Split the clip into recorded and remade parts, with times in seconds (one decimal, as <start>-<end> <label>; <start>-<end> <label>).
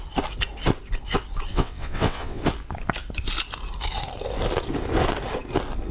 0.0-1.5 recorded; 1.5-2.4 remade; 2.4-5.9 recorded